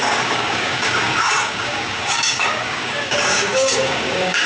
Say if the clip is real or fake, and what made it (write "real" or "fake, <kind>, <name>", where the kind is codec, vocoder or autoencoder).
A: fake, codec, DAC